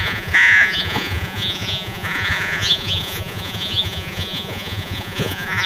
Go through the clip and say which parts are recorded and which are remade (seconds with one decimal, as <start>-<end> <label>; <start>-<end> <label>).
0.0-5.7 remade